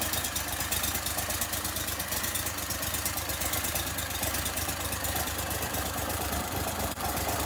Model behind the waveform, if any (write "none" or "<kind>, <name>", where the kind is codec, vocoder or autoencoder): vocoder, BigVGAN v2